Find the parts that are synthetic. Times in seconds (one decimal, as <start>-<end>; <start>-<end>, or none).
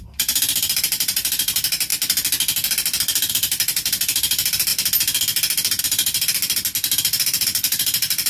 0.0-1.9; 3.3-4.7; 5.8-6.4; 7.0-8.3